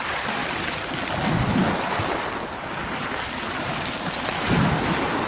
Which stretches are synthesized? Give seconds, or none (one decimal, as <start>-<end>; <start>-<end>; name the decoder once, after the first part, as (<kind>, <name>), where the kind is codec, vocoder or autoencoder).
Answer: none